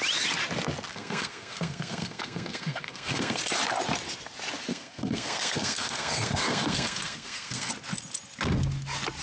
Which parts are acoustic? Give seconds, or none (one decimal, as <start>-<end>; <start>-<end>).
0.0-0.9; 3.4-4.7; 7.7-9.2